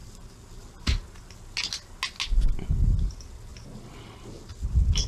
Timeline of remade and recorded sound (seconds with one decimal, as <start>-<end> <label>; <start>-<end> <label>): 0.0-5.1 recorded